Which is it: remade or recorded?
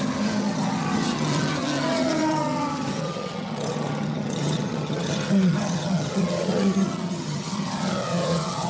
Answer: remade